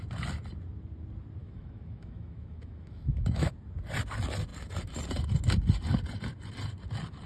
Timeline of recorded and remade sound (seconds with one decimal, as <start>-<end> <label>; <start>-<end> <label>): 0.0-1.4 recorded; 1.4-3.5 remade; 3.5-7.3 recorded